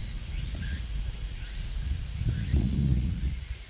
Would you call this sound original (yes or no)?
no